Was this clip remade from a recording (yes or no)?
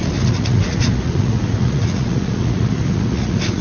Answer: yes